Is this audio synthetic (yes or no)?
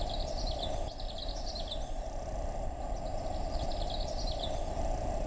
yes